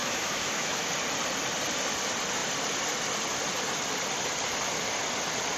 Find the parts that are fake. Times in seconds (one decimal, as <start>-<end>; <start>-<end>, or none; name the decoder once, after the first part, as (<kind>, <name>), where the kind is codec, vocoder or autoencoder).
0.0-0.9 (autoencoder, DAC-VAE)